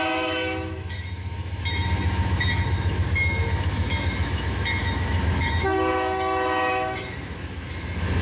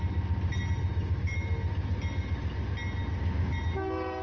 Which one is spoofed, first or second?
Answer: first